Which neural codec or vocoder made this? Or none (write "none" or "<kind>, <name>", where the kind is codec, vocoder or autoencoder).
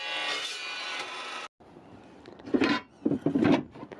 none